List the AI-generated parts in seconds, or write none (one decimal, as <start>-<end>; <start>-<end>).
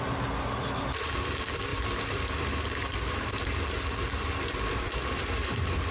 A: none